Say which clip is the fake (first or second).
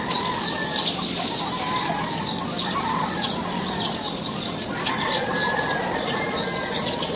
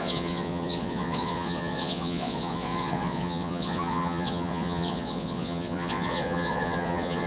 second